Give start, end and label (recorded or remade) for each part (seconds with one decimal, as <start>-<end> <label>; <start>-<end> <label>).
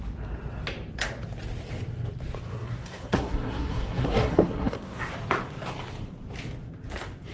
0.0-2.5 recorded; 2.5-5.1 remade; 5.1-7.3 recorded